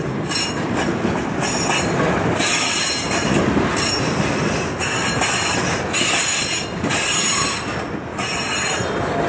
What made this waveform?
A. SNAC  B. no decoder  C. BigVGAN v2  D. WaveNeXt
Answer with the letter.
B